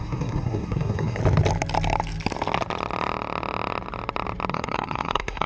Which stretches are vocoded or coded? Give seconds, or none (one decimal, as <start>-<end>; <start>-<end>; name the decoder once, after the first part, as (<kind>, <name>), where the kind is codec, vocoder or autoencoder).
0.0-1.2 (codec, SNAC); 4.5-5.5